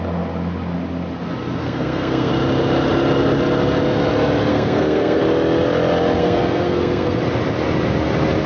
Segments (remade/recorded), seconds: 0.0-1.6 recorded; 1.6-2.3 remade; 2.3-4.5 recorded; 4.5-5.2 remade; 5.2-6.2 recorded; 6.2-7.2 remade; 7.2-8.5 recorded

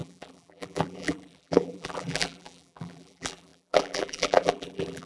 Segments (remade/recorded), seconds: 0.0-5.1 remade

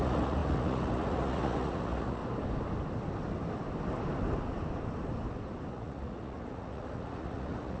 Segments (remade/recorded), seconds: 0.0-2.2 remade; 2.2-5.7 recorded; 5.7-7.8 remade

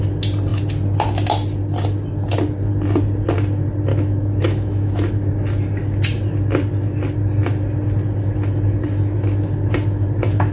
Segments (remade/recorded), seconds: 0.0-3.9 recorded; 3.9-5.3 remade; 5.3-10.5 recorded

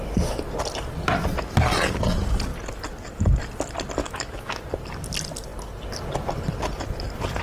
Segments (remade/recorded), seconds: 0.0-4.0 recorded; 4.0-4.6 remade; 4.6-7.4 recorded